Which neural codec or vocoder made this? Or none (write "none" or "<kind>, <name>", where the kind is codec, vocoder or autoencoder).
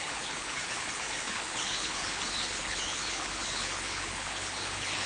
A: codec, HILCodec